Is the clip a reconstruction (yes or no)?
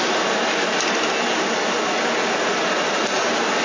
no